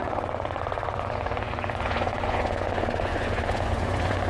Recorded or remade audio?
remade